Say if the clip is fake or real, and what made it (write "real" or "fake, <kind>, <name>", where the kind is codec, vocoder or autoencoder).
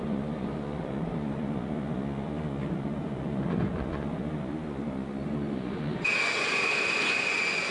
fake, vocoder, Vocos